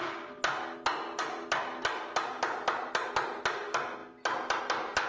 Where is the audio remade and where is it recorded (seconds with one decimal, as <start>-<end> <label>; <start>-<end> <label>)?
0.0-5.1 recorded